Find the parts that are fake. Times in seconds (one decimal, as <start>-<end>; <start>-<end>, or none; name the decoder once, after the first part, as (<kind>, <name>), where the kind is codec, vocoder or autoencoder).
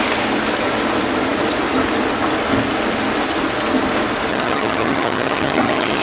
4.3-6.0 (vocoder, HiFi-GAN)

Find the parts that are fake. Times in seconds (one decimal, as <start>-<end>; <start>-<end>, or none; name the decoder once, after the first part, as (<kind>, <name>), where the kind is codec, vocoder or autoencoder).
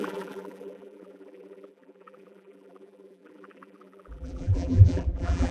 0.0-5.5 (vocoder, BigVGAN v2)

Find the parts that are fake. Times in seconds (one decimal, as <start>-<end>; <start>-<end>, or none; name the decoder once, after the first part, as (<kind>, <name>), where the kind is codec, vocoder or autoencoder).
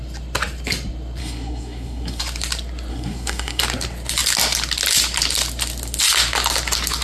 1.2-2.2 (codec, SNAC); 2.9-3.6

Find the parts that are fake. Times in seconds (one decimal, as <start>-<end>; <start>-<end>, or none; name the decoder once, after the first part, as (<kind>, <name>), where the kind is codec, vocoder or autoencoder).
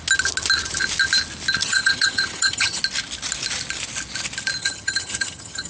1.6-2.8 (vocoder, HiFi-GAN); 4.6-5.7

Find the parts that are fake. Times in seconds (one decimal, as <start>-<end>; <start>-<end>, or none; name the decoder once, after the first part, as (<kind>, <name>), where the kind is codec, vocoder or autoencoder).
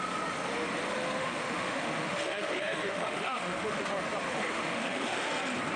1.2-3.9 (autoencoder, DAC-VAE); 4.3-5.3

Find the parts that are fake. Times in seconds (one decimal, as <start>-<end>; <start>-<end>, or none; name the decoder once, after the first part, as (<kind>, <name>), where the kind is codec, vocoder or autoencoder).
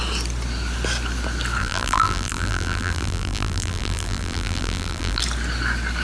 1.6-5.2 (vocoder, BigVGAN v2)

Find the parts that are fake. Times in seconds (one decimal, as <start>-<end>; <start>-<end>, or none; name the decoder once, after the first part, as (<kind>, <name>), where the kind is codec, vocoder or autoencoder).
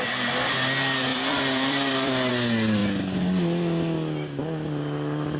1.1-2.3 (vocoder, BigVGAN v2)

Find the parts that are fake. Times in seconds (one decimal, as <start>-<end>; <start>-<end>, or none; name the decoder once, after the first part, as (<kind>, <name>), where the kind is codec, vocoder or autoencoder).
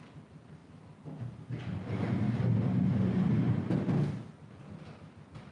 none